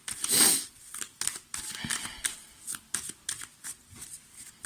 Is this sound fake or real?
real